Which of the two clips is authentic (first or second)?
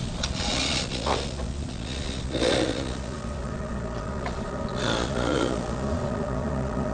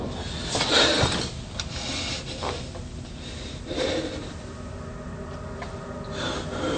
second